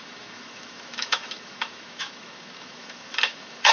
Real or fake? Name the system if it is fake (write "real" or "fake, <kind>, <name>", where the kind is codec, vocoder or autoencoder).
fake, autoencoder, DAC-VAE